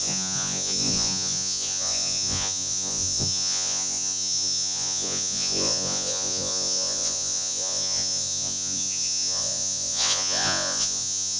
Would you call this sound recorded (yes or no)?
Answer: no